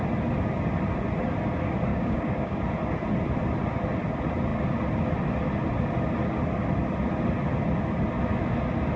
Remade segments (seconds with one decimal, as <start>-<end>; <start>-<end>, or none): 1.9-2.6